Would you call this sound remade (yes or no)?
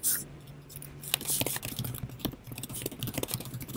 no